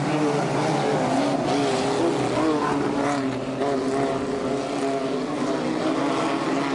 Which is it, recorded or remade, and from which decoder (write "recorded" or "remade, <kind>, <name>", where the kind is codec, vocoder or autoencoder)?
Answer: recorded